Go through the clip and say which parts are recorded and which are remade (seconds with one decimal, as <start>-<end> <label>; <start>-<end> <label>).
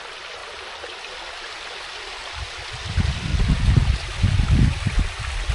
0.0-0.4 remade; 0.4-2.3 recorded; 2.3-3.3 remade; 3.3-5.5 recorded